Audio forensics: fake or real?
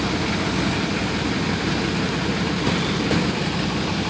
real